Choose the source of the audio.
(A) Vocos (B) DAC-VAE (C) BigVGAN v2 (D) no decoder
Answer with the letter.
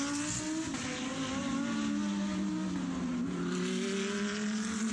D